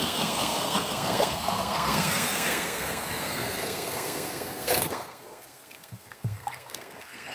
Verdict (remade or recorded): remade